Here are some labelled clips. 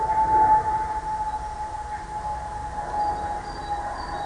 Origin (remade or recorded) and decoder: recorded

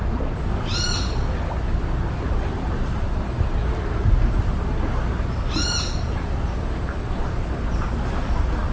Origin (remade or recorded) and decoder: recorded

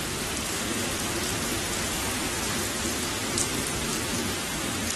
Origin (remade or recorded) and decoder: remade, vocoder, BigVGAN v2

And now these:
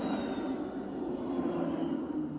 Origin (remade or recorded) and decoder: recorded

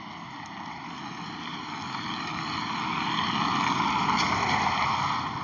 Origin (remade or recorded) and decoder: recorded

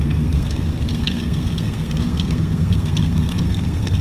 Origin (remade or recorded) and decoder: remade, codec, SNAC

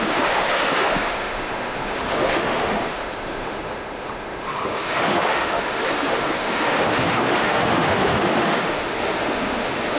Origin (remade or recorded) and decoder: remade, autoencoder, DAC-VAE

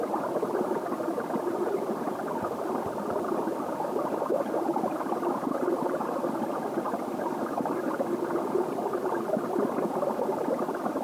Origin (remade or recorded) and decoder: recorded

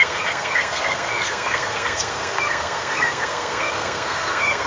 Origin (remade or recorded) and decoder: remade, codec, SNAC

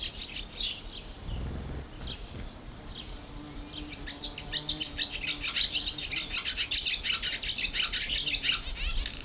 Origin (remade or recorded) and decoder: recorded